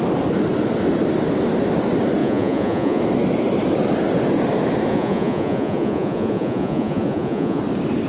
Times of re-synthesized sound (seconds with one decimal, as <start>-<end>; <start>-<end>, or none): 2.2-3.0; 4.9-7.6